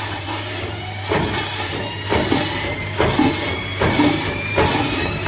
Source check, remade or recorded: remade